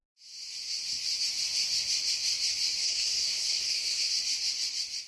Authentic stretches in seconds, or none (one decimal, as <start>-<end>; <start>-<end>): 0.0-2.8; 4.1-5.1